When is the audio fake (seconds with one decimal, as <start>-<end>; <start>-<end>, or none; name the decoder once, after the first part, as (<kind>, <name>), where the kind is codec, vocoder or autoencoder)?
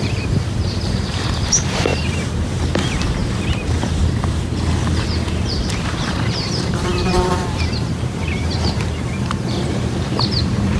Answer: 0.0-3.2 (vocoder, BigVGAN v2); 5.4-10.8